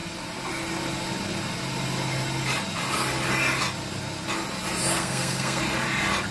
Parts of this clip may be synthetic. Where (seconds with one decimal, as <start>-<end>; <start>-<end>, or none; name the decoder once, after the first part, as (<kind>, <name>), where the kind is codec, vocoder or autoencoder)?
4.9-5.6 (codec, SNAC)